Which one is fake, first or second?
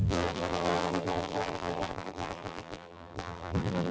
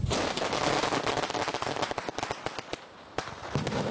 first